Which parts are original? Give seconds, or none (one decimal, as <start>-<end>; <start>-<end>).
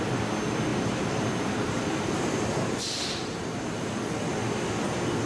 0.0-0.7; 3.9-5.3